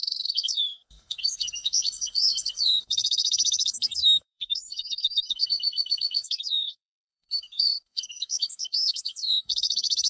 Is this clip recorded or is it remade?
remade